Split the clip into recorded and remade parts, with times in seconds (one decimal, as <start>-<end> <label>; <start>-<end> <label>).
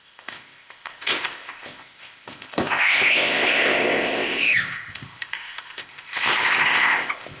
0.0-7.4 remade